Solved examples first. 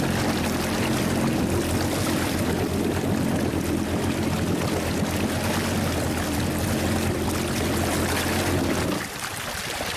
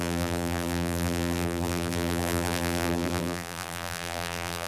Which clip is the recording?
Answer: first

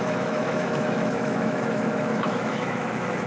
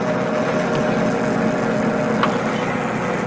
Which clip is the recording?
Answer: second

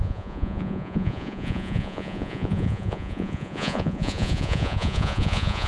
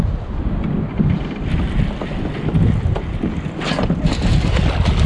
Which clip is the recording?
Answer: second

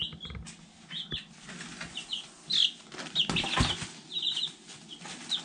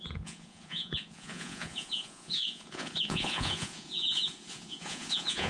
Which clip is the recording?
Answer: first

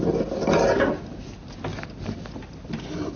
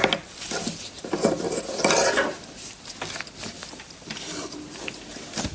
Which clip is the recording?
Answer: first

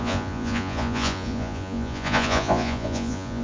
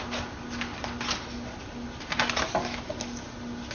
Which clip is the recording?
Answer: second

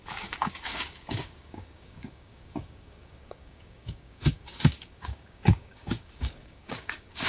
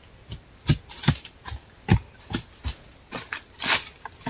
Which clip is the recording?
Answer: second